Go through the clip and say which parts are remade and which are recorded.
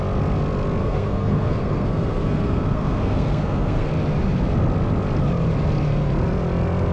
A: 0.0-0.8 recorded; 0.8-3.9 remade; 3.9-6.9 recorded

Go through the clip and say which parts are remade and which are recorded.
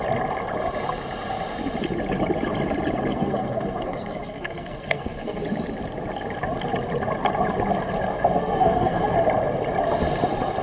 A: 0.0-3.1 recorded; 3.1-5.4 remade; 5.4-8.1 recorded; 8.1-9.1 remade; 9.1-10.6 recorded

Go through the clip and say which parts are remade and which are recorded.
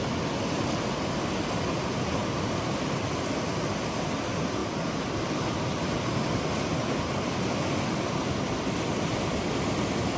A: 0.0-10.2 recorded